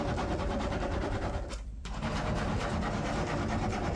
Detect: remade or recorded remade